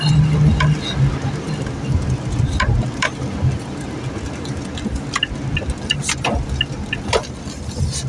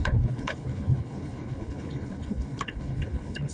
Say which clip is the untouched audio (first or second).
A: first